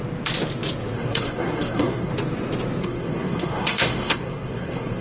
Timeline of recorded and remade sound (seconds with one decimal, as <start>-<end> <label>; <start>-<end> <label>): 0.0-0.9 recorded; 0.9-2.1 remade; 2.1-2.8 recorded; 2.8-5.0 remade